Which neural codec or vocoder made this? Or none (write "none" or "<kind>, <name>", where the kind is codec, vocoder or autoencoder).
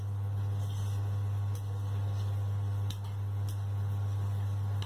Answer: none